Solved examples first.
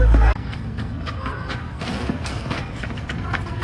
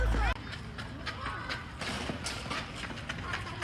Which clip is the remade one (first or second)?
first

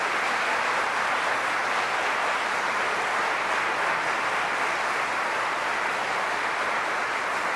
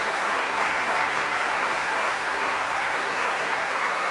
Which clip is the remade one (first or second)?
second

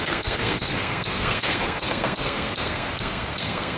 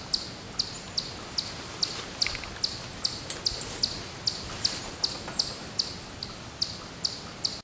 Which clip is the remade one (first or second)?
first